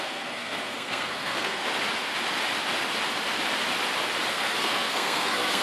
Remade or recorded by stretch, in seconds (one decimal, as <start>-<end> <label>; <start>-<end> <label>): 0.0-1.6 remade; 1.6-4.3 recorded; 4.3-5.6 remade

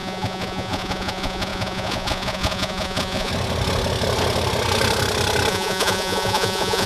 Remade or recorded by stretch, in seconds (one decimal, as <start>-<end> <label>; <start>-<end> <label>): 0.0-3.3 remade; 3.3-5.5 recorded; 5.5-6.9 remade

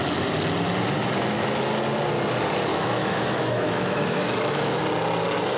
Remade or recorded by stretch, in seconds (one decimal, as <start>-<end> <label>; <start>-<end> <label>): 0.0-2.7 recorded; 2.7-4.8 remade; 4.8-5.6 recorded

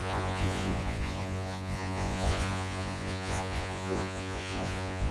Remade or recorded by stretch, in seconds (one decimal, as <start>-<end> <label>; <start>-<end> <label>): 0.0-5.1 remade

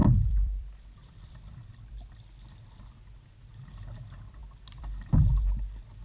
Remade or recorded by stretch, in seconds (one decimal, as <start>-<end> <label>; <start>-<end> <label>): 0.0-2.2 remade; 2.2-4.4 recorded; 4.4-5.3 remade; 5.3-6.0 recorded

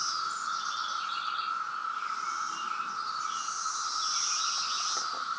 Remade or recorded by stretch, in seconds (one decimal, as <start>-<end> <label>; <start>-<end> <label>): 0.0-5.4 recorded

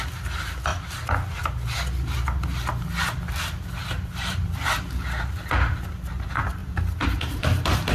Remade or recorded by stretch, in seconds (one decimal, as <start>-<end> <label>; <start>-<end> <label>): 0.0-3.8 recorded; 3.8-4.5 remade; 4.5-6.6 recorded; 6.6-7.9 remade

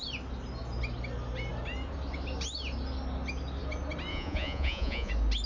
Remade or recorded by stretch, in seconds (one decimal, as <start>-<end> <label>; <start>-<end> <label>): 0.0-4.1 recorded; 4.1-5.1 remade; 5.1-5.5 recorded